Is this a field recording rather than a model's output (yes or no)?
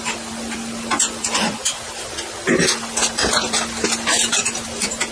yes